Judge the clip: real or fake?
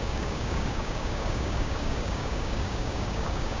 fake